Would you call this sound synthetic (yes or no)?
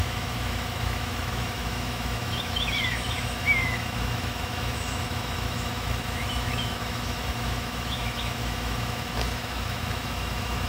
yes